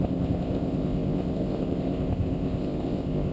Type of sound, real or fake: fake